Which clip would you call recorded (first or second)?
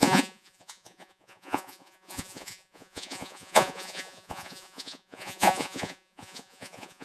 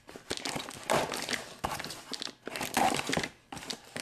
second